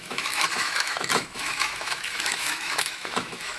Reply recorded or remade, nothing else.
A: remade